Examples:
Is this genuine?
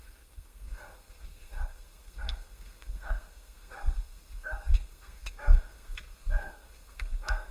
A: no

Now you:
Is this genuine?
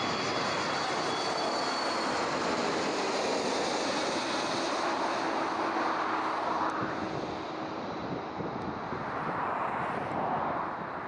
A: yes